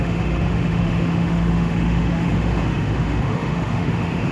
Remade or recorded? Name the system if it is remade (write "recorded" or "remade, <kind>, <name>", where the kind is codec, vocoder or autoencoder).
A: remade, autoencoder, DAC-VAE